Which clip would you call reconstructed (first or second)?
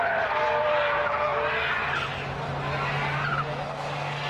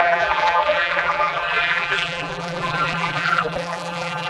second